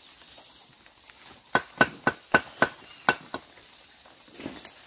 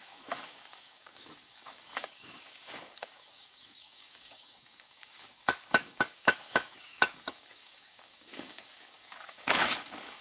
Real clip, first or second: first